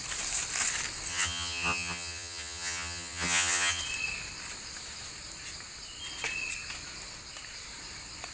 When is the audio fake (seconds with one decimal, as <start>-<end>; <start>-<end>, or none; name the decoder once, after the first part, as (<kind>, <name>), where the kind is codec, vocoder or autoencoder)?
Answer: 1.1-3.8 (vocoder, HiFi-GAN)